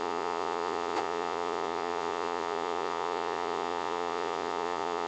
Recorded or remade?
remade